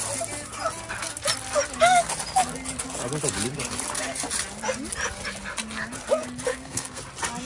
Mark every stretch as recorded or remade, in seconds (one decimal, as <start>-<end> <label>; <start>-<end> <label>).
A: 0.0-6.5 recorded; 6.5-7.0 remade; 7.0-7.4 recorded